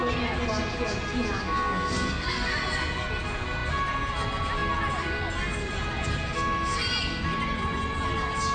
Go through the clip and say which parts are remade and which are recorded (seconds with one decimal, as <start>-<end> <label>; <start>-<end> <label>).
0.0-1.4 recorded; 1.4-2.5 remade; 2.5-8.5 recorded